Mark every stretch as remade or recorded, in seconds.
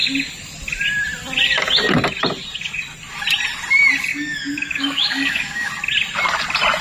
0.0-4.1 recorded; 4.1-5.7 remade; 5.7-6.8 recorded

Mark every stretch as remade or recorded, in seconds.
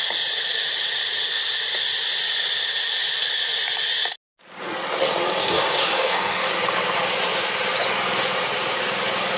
0.0-5.4 recorded; 5.4-6.5 remade; 6.5-9.4 recorded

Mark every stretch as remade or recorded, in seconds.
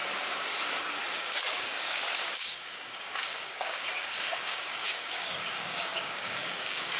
0.0-1.1 recorded; 1.1-7.0 remade